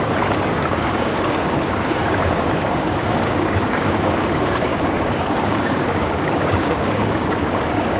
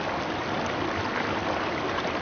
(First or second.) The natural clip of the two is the second